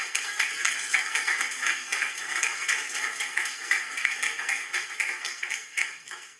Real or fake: fake